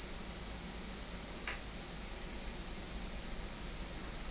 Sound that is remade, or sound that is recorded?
recorded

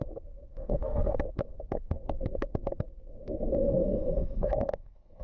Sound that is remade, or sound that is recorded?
remade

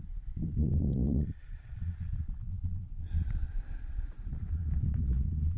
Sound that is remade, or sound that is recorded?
remade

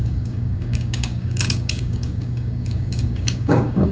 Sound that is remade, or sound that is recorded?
remade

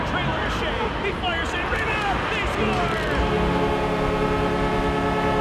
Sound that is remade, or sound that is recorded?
recorded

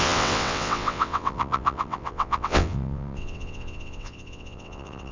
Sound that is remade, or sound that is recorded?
remade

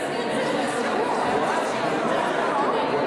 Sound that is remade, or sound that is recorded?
recorded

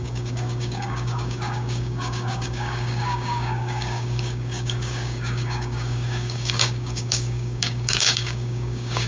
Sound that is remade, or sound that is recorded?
remade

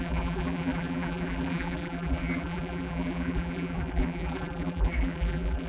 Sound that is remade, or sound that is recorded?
remade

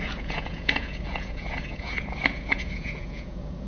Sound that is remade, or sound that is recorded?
remade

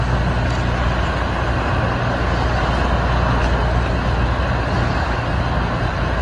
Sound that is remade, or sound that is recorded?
recorded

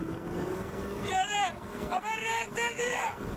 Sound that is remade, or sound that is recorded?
remade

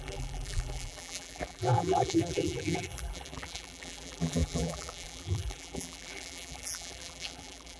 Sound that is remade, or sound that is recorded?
remade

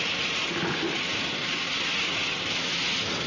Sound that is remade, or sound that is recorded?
recorded